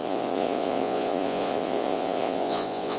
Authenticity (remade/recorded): remade